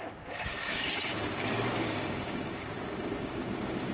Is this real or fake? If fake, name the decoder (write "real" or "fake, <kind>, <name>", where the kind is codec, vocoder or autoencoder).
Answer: fake, codec, DAC